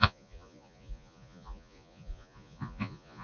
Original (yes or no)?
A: no